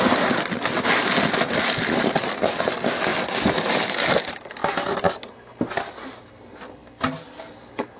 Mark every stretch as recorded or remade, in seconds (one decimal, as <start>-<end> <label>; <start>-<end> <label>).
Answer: 0.0-8.0 recorded